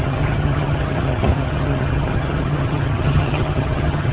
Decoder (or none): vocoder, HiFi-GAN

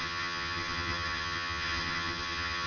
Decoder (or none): vocoder, HiFi-GAN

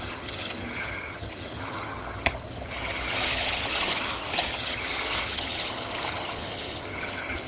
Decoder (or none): vocoder, HiFi-GAN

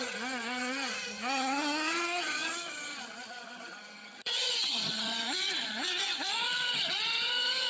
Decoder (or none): vocoder, HiFi-GAN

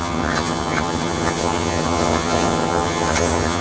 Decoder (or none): vocoder, HiFi-GAN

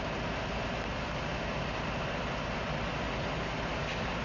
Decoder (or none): none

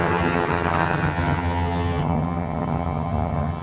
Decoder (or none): vocoder, HiFi-GAN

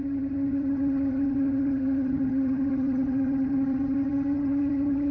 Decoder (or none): vocoder, HiFi-GAN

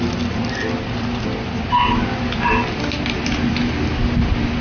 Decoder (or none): none